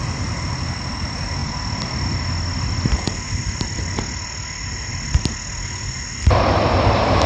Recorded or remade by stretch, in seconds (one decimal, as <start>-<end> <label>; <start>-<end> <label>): 0.0-7.3 recorded